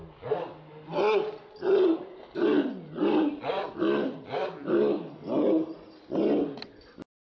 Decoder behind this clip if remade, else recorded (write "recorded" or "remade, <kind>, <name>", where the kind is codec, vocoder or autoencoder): recorded